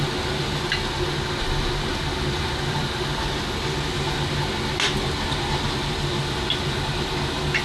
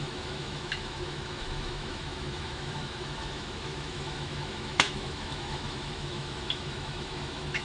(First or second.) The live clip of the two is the first